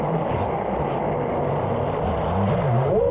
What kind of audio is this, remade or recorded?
recorded